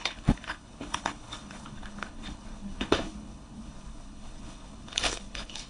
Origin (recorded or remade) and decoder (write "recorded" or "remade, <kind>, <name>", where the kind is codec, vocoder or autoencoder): remade, codec, HILCodec